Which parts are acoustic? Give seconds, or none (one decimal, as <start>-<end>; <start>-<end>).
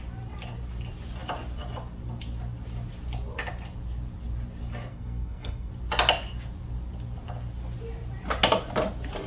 0.0-4.9; 5.7-9.3